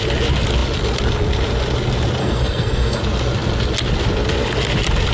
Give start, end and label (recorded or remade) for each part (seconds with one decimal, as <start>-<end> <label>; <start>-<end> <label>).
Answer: 0.0-2.2 recorded; 2.2-3.0 remade; 3.0-5.1 recorded